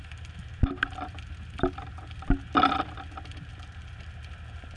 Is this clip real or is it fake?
real